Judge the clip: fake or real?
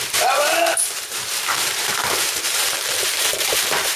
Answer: fake